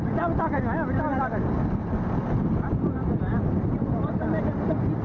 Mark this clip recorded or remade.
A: recorded